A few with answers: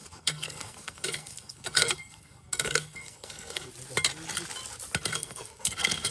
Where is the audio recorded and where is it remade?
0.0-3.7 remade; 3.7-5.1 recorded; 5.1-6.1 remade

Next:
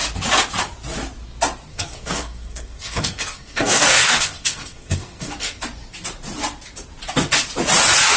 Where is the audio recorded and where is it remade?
0.0-1.7 recorded; 1.7-5.6 remade; 5.6-8.2 recorded

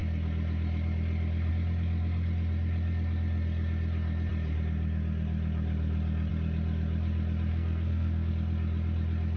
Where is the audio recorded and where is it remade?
0.0-7.5 recorded; 7.5-8.3 remade; 8.3-9.4 recorded

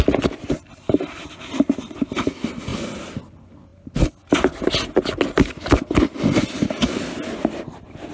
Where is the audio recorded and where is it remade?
0.0-8.1 recorded